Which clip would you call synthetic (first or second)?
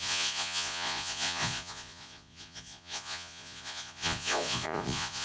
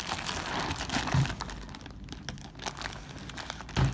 first